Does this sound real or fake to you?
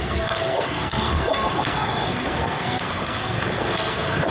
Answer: fake